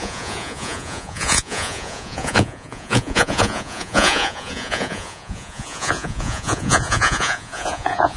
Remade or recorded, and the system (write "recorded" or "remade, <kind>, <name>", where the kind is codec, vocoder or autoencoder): remade, vocoder, Vocos